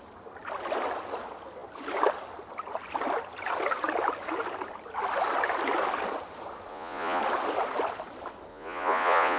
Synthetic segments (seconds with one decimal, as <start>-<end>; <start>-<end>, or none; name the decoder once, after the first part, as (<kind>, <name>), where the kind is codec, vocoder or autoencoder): 6.7-7.2 (vocoder, Vocos); 8.5-9.4